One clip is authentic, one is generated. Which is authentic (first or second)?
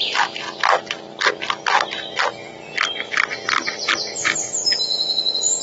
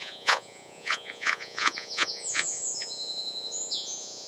first